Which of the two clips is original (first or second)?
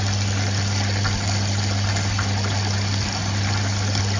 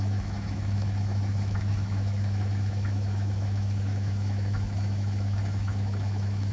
first